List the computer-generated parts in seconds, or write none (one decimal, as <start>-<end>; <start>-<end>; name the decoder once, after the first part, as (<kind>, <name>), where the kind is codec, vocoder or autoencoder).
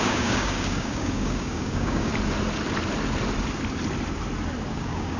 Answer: 0.0-2.1 (codec, DAC); 4.7-5.2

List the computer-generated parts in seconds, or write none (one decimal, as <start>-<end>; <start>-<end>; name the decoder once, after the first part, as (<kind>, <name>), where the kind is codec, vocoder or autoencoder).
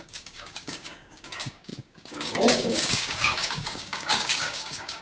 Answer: 0.0-5.0 (codec, DAC)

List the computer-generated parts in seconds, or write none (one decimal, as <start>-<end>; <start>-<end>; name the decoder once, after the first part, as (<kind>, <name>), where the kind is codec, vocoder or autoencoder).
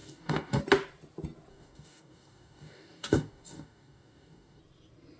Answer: 0.0-0.6 (codec, DAC); 1.5-4.6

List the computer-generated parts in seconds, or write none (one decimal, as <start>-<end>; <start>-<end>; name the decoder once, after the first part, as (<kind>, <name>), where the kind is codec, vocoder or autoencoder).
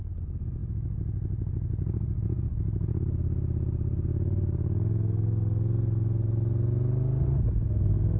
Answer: none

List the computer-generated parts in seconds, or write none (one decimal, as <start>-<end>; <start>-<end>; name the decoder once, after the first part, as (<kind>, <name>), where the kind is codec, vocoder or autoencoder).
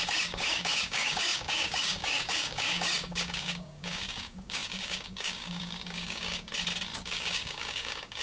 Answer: 0.0-6.5 (codec, DAC); 7.0-8.2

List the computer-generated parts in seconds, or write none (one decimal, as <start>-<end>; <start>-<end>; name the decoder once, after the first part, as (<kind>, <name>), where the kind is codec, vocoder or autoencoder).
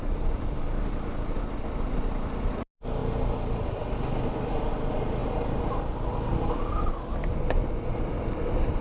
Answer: none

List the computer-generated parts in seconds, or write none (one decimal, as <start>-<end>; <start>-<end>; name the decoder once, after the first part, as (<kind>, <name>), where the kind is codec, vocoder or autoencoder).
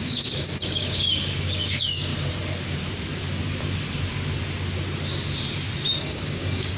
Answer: 0.0-2.1 (codec, DAC); 6.0-6.8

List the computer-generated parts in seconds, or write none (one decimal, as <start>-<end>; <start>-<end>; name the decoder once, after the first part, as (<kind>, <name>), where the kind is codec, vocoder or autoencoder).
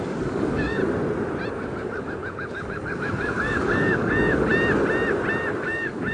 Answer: 0.0-0.8 (codec, DAC); 1.5-4.5; 5.6-6.1